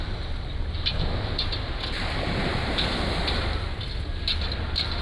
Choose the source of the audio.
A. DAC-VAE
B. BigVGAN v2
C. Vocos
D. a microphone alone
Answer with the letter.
D